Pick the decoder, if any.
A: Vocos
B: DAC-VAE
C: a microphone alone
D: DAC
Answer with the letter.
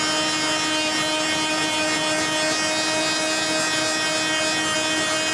C